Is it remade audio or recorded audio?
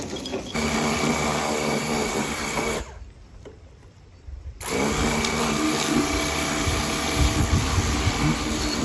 recorded